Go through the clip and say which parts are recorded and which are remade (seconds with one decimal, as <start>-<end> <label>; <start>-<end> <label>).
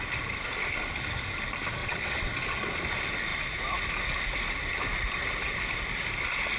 0.0-1.8 recorded; 1.8-2.3 remade; 2.3-6.6 recorded